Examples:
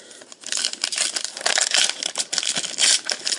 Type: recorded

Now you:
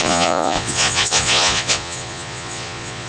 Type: remade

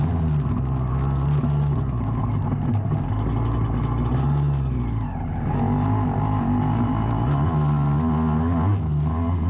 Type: recorded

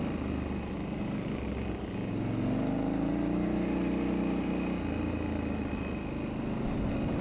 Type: recorded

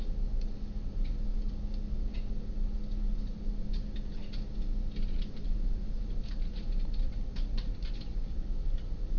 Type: recorded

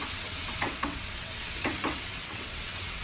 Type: remade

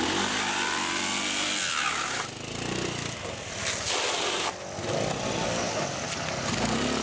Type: recorded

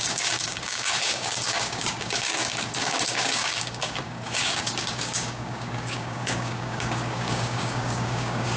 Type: remade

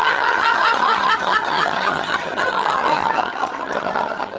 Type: remade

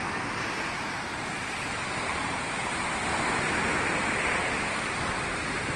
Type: recorded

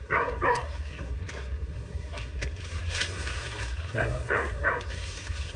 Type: remade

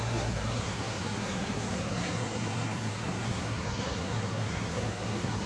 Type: remade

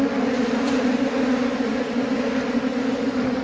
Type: recorded